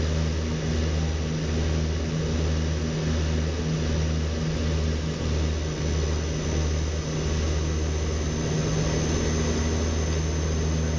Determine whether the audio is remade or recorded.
recorded